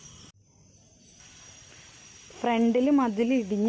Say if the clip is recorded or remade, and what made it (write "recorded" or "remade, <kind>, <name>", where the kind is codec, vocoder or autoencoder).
recorded